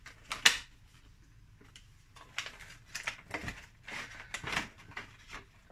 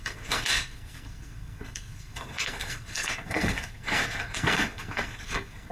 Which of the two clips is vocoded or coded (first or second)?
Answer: second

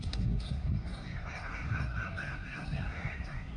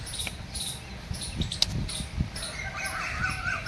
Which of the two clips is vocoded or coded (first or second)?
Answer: first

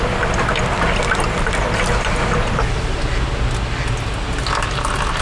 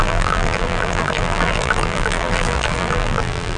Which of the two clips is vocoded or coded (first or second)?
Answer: second